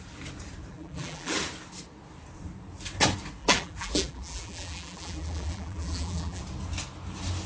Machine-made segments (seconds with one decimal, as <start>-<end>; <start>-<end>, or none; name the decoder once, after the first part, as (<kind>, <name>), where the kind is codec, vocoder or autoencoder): 0.7-1.3 (vocoder, BigVGAN v2); 3.4-6.4